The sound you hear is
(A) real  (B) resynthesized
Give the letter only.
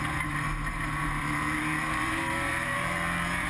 B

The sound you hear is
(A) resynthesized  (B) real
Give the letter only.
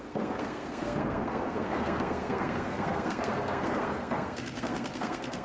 A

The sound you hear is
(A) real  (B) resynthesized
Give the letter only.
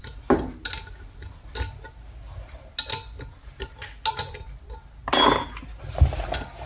A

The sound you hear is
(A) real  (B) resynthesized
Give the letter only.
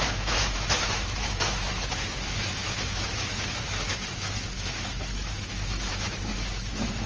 B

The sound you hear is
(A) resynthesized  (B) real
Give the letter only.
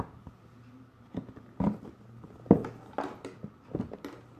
B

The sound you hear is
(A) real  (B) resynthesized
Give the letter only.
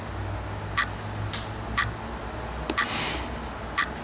A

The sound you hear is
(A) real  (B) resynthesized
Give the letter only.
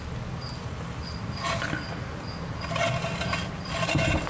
A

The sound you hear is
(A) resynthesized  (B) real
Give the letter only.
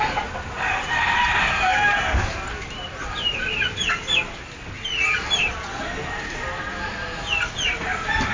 B